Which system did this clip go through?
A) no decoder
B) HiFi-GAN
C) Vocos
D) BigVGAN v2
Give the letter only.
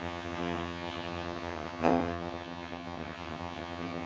B